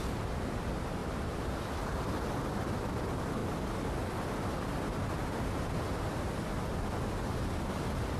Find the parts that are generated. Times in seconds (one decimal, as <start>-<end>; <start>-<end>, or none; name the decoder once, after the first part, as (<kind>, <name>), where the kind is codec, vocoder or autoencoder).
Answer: 1.0-3.0 (vocoder, BigVGAN v2)